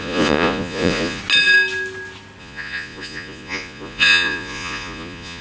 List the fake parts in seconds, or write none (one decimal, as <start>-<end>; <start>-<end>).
0.0-1.2; 2.4-5.4